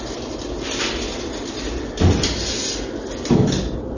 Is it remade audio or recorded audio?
recorded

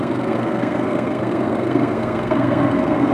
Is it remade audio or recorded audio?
remade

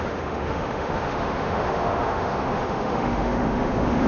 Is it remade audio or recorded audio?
remade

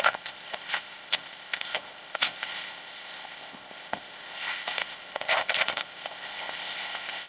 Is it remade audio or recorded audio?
remade